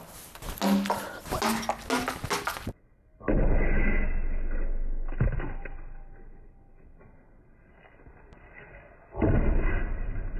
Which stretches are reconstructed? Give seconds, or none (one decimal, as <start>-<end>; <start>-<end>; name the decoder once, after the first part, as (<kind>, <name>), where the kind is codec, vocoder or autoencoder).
none